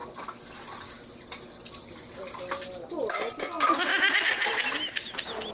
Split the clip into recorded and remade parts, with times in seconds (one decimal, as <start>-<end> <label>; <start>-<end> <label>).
0.0-5.5 recorded